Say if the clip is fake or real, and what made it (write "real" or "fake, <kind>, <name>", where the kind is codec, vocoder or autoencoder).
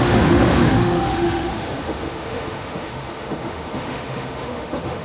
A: fake, autoencoder, DAC-VAE